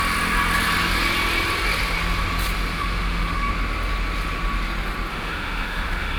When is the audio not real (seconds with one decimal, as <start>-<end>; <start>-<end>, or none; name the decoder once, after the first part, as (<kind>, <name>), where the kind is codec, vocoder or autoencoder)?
2.7-3.5 (autoencoder, DAC-VAE); 5.1-6.2